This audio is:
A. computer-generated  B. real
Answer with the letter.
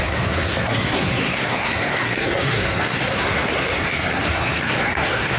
A